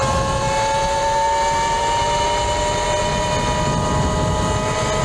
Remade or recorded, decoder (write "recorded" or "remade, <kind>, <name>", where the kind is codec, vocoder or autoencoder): recorded